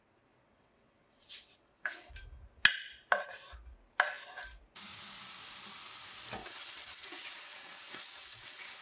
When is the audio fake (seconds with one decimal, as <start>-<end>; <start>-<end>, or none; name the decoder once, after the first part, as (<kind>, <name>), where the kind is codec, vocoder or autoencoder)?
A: 0.4-2.1 (vocoder, WaveNeXt); 6.4-8.8